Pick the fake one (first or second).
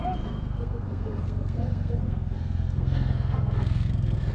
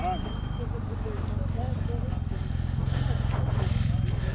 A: first